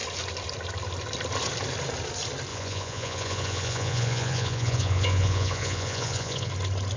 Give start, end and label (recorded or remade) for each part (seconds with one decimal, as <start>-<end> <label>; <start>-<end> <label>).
0.0-2.5 recorded; 2.5-6.5 remade; 6.5-7.0 recorded